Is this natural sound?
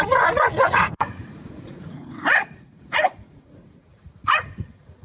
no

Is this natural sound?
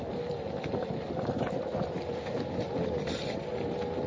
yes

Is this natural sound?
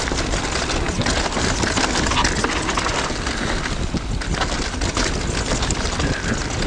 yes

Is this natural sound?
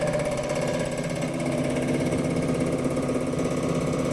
yes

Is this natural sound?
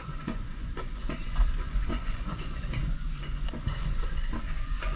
no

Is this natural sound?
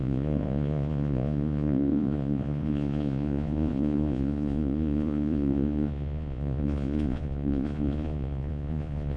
no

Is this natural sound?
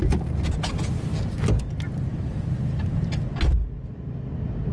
yes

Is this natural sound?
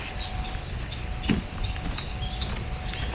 yes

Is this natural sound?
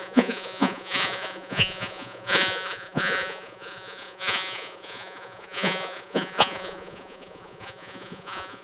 no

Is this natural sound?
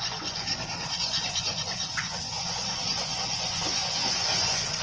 no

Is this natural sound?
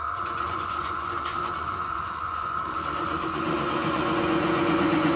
no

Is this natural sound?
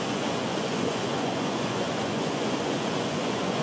no